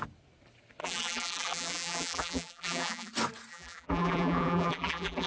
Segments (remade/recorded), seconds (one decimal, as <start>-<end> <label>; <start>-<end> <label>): 0.0-0.8 recorded; 0.8-3.1 remade; 3.1-3.5 recorded; 3.5-5.3 remade